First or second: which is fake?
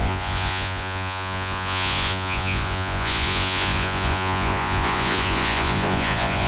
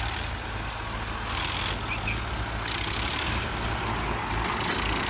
first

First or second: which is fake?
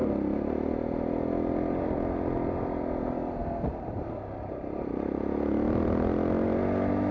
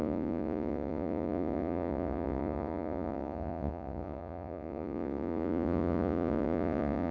second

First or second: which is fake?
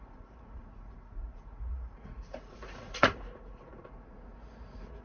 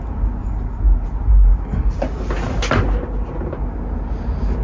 first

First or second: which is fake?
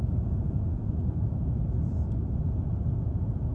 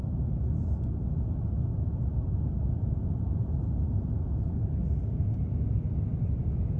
first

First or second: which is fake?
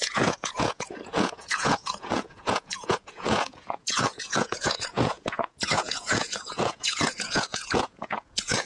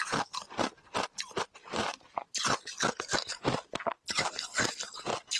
first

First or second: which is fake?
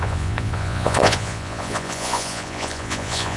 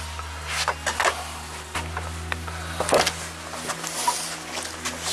first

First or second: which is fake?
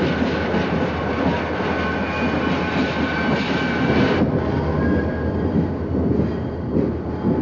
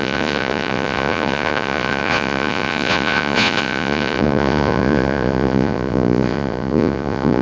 second